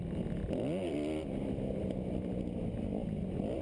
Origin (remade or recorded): recorded